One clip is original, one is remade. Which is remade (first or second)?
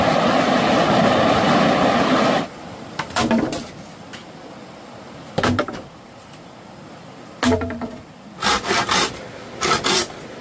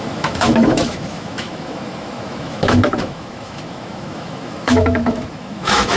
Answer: second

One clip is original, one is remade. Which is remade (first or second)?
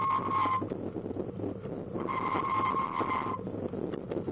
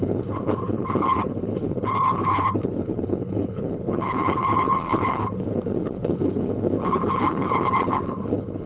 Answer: second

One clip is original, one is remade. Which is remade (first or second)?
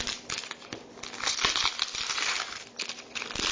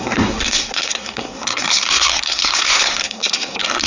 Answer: second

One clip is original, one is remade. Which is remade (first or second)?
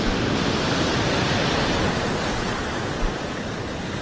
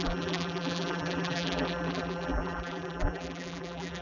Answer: second